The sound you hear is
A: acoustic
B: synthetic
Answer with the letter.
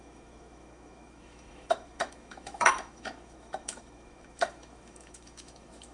B